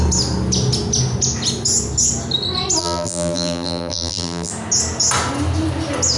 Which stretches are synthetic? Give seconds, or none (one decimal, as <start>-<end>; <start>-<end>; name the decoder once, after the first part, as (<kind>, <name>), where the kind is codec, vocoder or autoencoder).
2.8-4.5 (vocoder, BigVGAN v2)